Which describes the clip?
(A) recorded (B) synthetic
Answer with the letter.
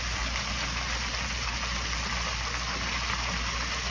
A